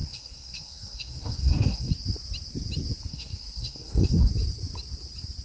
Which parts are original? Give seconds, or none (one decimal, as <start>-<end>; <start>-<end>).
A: 1.9-3.1; 4.3-5.4